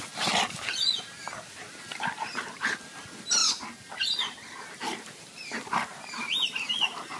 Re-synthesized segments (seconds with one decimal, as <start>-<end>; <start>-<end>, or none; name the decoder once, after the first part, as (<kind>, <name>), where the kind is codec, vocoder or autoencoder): none